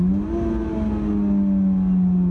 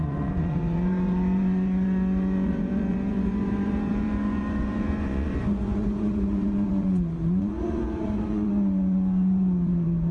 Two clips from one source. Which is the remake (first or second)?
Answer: second